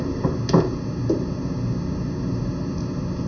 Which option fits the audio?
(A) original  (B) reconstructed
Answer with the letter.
A